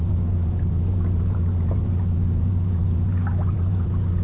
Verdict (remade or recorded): remade